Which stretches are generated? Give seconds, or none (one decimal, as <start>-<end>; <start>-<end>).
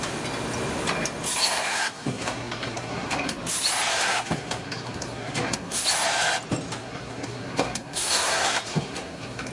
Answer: 1.4-3.4; 3.9-5.8; 6.8-9.5